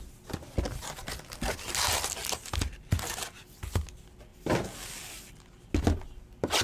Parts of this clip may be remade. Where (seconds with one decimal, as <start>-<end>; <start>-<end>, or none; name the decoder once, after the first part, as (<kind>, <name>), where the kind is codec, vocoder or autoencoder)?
none